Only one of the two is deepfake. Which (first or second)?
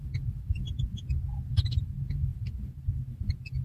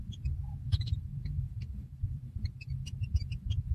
second